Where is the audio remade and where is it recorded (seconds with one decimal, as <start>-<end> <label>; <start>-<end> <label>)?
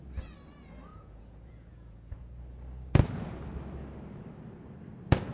0.0-0.9 recorded; 0.9-2.4 remade; 2.4-5.3 recorded